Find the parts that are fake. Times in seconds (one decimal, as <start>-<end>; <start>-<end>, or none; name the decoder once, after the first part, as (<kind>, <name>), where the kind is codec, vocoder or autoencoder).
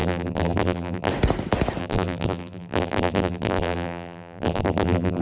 0.0-1.1 (vocoder, BigVGAN v2); 1.8-5.2